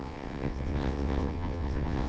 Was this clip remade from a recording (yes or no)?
yes